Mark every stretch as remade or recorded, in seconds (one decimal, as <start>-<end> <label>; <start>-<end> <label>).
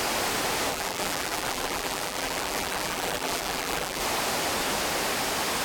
0.0-0.7 recorded; 0.7-4.0 remade; 4.0-5.6 recorded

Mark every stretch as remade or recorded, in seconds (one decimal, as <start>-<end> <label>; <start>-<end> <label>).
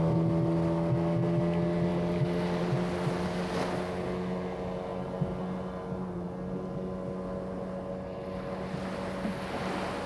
0.0-10.1 recorded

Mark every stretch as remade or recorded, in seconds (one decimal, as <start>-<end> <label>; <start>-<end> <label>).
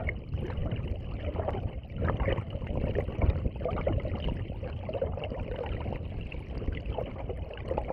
0.0-7.9 remade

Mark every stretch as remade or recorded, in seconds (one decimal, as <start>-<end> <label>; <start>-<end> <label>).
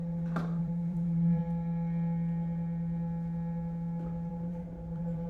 0.0-0.6 recorded; 0.6-1.4 remade; 1.4-4.3 recorded; 4.3-5.3 remade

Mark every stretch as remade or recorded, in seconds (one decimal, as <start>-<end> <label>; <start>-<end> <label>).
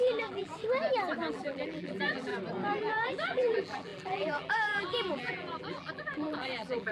0.0-0.5 remade; 0.5-1.3 recorded; 1.3-2.3 remade; 2.3-2.8 recorded; 2.8-6.9 remade